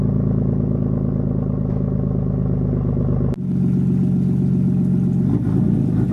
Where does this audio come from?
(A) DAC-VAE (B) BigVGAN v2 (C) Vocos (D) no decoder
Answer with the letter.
D